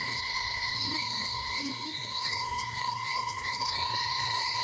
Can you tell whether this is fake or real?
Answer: fake